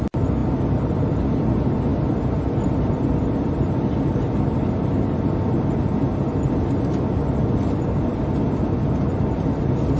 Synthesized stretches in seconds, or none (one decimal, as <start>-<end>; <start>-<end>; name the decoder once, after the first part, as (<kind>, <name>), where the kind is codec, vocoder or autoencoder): none